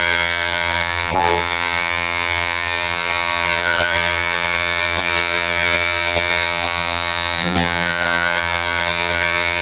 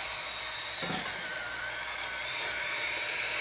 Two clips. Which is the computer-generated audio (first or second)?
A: first